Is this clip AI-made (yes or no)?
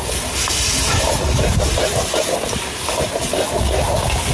no